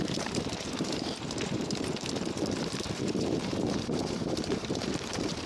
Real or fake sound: fake